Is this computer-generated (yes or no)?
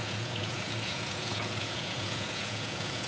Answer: yes